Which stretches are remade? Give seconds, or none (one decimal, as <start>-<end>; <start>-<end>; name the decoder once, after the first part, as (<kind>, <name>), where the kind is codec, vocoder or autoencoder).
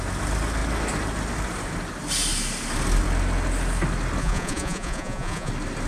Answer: 4.2-5.5 (vocoder, Vocos)